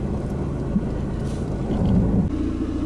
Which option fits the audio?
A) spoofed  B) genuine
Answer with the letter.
B